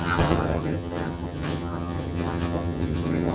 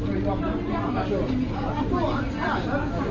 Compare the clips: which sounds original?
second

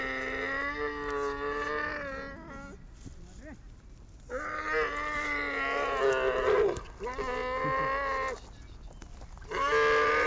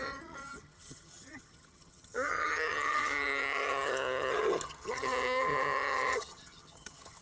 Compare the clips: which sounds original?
first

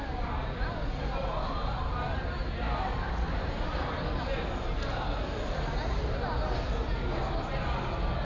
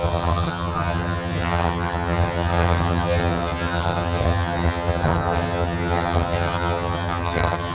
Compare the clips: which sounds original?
first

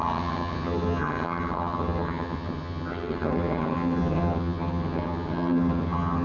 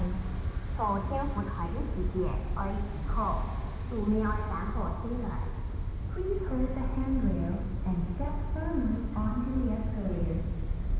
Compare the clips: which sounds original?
second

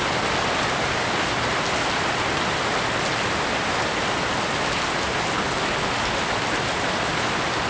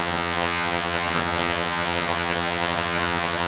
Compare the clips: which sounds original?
first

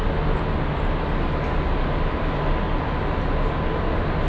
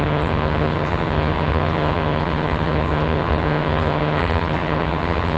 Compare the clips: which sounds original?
first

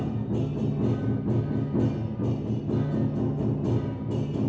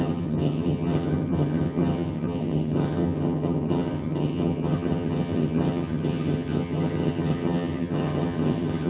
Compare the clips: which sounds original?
first